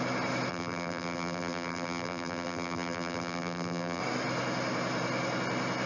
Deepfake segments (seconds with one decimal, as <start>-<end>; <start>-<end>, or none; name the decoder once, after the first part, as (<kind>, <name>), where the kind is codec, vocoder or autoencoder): 0.5-4.0 (vocoder, BigVGAN v2)